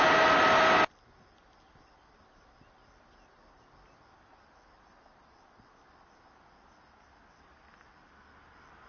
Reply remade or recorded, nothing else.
recorded